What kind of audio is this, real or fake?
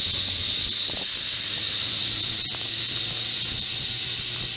fake